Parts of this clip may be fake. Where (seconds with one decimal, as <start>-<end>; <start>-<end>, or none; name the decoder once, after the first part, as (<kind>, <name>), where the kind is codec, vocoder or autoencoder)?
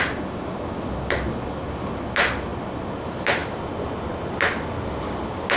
none